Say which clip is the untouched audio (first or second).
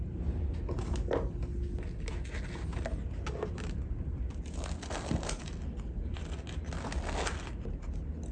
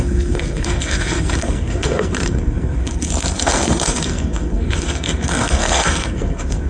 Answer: first